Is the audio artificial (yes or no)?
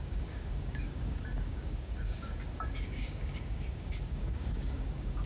yes